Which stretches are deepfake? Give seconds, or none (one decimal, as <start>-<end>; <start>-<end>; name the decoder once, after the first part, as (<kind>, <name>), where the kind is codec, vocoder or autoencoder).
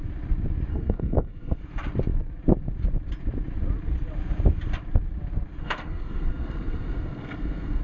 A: 0.7-1.6 (codec, SNAC); 5.6-7.8